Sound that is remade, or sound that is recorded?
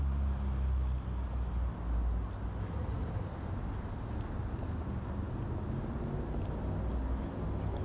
recorded